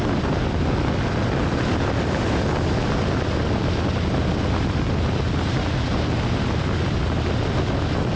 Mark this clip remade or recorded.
recorded